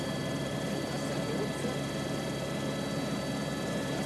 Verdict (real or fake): real